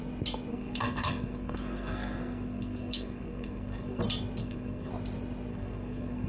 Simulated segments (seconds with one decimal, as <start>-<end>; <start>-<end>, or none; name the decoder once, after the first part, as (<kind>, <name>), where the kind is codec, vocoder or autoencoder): 0.5-4.0 (codec, SNAC); 4.4-4.9; 5.5-6.3